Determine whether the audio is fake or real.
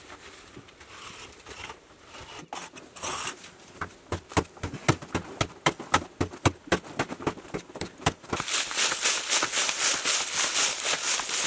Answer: real